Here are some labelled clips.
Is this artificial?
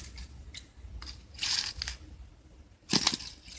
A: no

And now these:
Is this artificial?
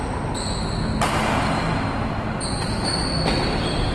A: no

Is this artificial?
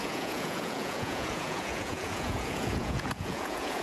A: yes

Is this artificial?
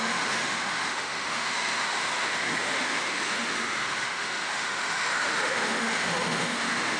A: yes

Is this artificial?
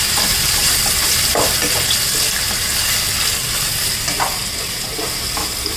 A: no